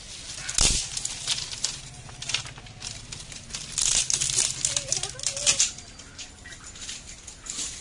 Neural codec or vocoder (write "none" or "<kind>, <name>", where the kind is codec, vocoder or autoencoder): none